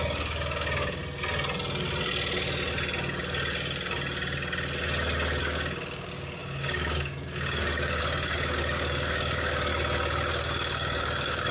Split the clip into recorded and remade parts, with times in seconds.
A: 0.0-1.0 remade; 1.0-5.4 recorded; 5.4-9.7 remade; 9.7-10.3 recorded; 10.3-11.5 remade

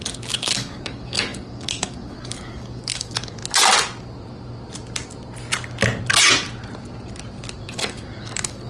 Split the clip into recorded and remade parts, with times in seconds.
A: 0.0-3.4 remade; 3.4-7.6 recorded; 7.6-8.7 remade

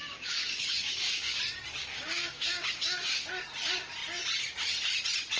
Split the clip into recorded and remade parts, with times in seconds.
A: 0.0-1.4 remade; 1.4-1.8 recorded; 1.8-3.3 remade; 3.3-5.4 recorded

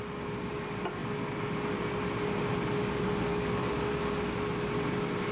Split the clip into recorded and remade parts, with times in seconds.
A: 0.0-3.3 recorded; 3.3-3.8 remade; 3.8-5.3 recorded

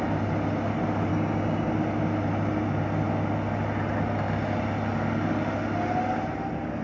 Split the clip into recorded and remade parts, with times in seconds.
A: 0.0-1.1 recorded; 1.1-1.7 remade; 1.7-6.8 recorded

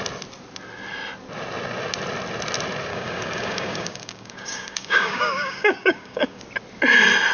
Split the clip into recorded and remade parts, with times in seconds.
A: 0.0-2.9 recorded; 2.9-6.4 remade; 6.4-7.3 recorded